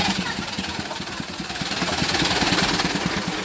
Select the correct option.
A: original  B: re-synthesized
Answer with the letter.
B